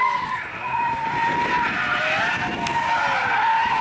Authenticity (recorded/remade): recorded